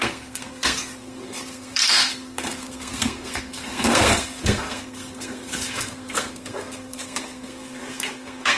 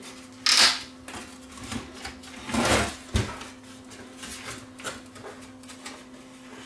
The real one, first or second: second